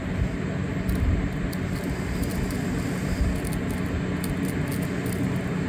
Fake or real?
real